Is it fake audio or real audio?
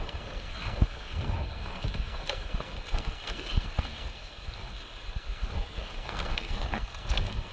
fake